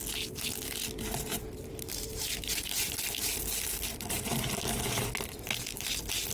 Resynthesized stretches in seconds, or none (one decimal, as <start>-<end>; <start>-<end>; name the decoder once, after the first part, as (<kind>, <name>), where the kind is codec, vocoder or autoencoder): 1.3-3.0 (vocoder, BigVGAN v2); 3.9-4.5